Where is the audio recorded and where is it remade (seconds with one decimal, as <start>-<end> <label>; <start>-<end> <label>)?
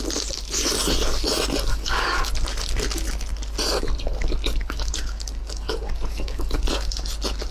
0.0-1.7 recorded; 1.7-2.3 remade; 2.3-4.6 recorded; 4.6-6.6 remade; 6.6-7.5 recorded